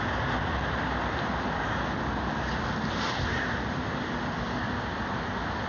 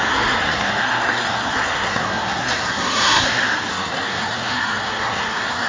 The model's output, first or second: second